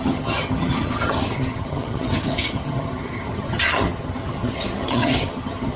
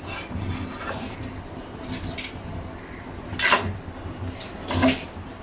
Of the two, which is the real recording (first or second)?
second